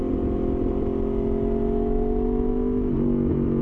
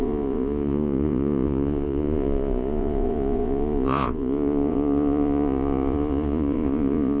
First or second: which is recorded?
first